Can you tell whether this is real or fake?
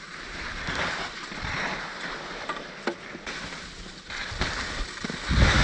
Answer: real